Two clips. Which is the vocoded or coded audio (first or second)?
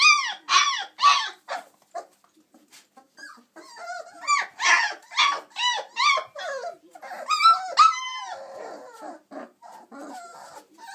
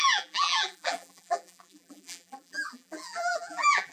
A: second